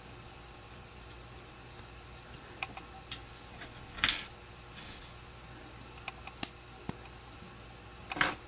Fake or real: real